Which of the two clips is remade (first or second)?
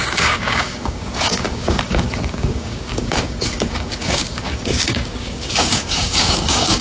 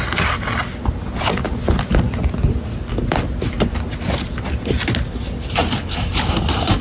first